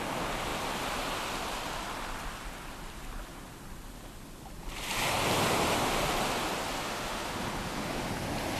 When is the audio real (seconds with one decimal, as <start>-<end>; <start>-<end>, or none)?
0.0-6.8; 8.1-8.6

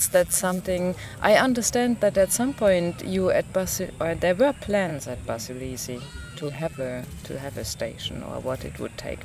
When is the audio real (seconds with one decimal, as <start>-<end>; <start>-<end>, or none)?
0.6-6.1; 6.8-9.2

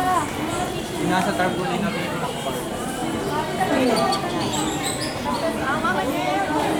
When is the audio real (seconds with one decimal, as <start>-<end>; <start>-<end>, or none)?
0.0-1.4; 3.0-6.1

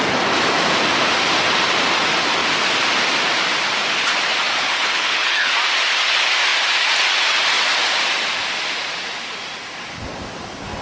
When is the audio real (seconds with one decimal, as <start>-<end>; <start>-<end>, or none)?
0.0-4.5; 5.5-10.8